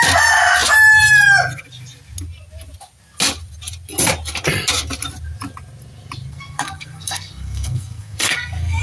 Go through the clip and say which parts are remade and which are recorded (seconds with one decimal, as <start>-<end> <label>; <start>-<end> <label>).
0.0-6.3 recorded; 6.3-8.8 remade